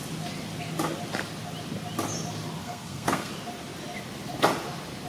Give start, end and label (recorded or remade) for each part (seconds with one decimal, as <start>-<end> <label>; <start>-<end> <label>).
0.0-2.6 recorded; 2.6-3.3 remade; 3.3-5.1 recorded